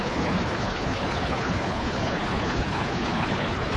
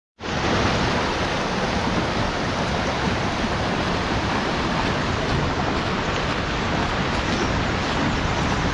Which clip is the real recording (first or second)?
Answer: second